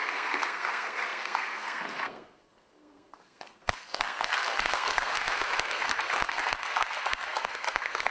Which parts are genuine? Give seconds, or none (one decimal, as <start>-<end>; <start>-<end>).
none